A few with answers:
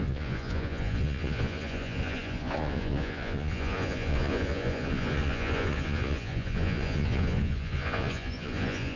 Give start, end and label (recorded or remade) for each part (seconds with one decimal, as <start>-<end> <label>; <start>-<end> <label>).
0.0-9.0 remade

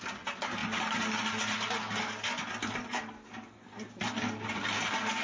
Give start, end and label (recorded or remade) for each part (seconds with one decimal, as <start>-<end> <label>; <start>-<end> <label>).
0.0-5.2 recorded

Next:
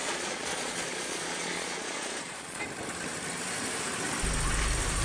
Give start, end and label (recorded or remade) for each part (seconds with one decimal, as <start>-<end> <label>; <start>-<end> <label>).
0.0-2.6 remade; 2.6-5.0 recorded